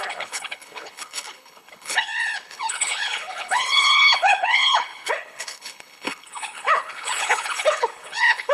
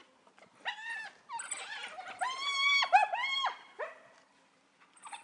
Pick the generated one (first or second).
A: first